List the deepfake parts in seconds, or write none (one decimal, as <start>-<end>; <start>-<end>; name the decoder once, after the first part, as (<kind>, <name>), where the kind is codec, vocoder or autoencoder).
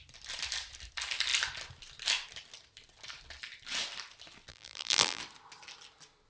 4.5-5.2 (vocoder, BigVGAN v2)